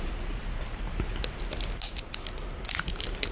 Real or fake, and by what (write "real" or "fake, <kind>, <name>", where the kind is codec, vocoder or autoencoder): real